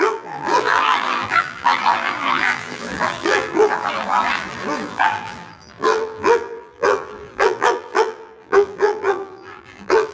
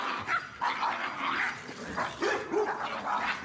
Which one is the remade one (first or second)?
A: first